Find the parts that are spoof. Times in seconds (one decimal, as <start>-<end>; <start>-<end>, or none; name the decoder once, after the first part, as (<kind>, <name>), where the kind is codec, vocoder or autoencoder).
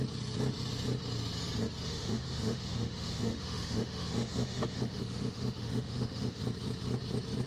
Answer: 1.9-6.4 (autoencoder, DAC-VAE)